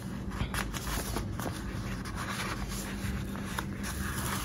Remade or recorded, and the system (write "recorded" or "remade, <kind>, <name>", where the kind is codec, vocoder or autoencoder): recorded